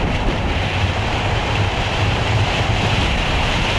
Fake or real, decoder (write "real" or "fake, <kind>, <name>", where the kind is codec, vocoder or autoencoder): fake, vocoder, BigVGAN v2